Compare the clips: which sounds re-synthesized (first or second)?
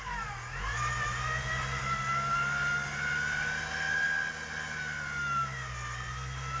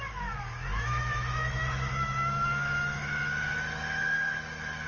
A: second